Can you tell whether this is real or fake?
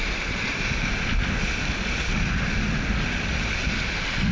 real